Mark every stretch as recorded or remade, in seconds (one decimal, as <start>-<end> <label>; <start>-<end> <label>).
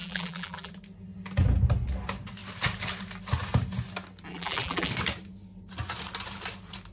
0.0-0.7 remade; 0.7-4.3 recorded; 4.3-4.9 remade; 4.9-6.9 recorded